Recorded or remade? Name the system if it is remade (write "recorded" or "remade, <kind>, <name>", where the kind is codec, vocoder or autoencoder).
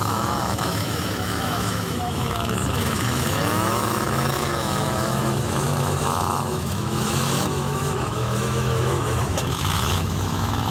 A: remade, autoencoder, DAC-VAE